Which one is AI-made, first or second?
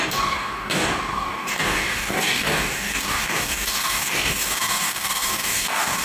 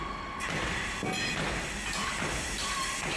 first